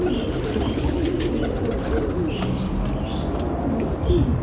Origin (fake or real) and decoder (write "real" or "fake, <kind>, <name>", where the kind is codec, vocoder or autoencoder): real